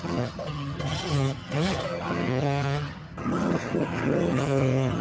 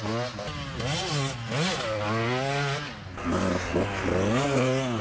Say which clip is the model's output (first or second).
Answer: first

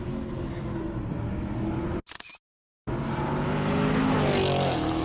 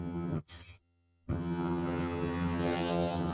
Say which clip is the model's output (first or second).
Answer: second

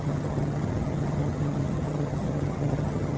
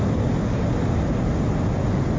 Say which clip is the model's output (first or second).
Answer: first